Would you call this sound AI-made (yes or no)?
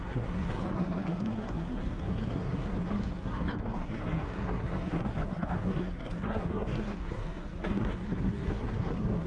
yes